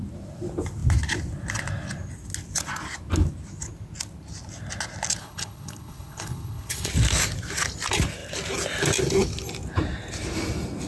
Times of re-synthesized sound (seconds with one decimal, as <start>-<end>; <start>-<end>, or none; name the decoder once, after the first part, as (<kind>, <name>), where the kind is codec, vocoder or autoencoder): 5.2-6.9 (codec, HILCodec)